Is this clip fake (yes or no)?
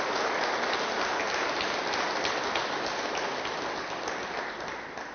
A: no